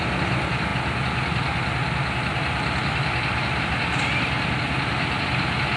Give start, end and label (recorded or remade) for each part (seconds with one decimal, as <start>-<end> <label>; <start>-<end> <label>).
0.0-5.8 recorded